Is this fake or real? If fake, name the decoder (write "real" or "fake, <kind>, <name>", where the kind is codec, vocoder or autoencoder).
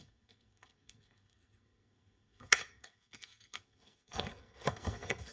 fake, codec, SNAC